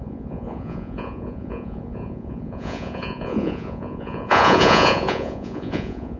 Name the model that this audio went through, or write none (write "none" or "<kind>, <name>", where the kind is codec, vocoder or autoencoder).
vocoder, Vocos